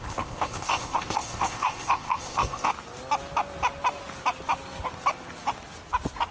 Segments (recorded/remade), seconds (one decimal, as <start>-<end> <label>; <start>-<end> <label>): 0.0-2.7 remade; 2.7-6.3 recorded